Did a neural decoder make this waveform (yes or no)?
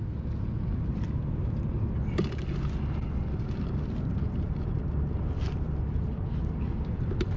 no